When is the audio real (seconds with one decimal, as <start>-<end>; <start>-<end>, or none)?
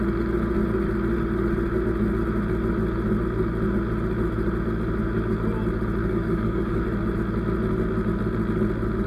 0.0-6.0; 6.8-9.1